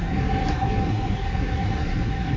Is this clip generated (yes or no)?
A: yes